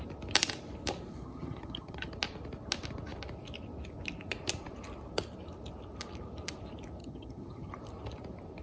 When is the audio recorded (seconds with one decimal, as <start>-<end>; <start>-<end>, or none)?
0.0-1.1; 2.1-7.0; 7.7-8.6